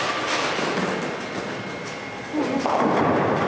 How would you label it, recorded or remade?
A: recorded